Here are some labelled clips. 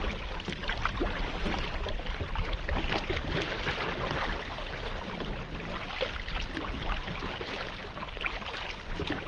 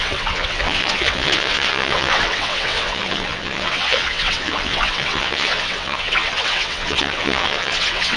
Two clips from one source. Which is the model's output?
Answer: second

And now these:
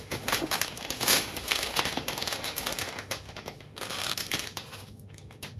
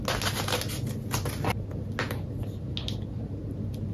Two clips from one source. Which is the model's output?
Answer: first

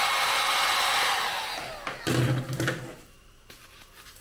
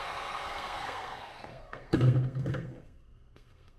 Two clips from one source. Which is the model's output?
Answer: second